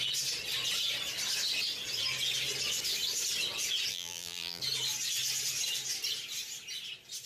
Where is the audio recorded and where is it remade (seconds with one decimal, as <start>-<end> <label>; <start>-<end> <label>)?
0.0-3.9 recorded; 3.9-4.6 remade; 4.6-7.3 recorded